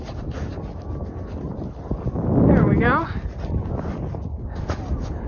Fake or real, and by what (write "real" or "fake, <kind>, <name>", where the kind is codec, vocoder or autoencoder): real